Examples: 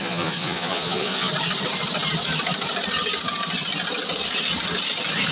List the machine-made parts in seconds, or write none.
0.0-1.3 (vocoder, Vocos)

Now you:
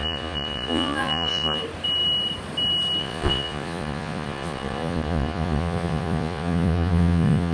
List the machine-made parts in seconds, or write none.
0.0-1.6 (vocoder, Vocos); 3.0-7.5

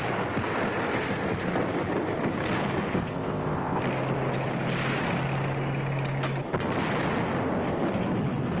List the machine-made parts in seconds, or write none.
2.9-3.8 (codec, ZipCodec)

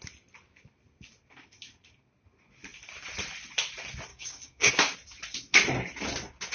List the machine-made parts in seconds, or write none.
4.1-4.7 (codec, DAC)

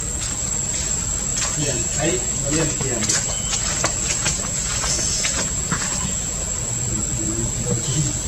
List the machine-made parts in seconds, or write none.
1.3-6.2 (vocoder, Vocos)

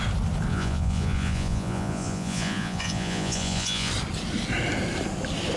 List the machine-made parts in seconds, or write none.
0.5-3.9 (vocoder, Vocos)

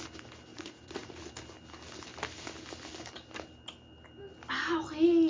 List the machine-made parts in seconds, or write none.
0.5-1.3 (vocoder, Vocos)